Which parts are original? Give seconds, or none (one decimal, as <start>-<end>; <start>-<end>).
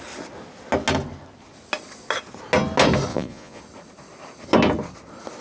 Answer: 0.0-3.1; 3.6-5.4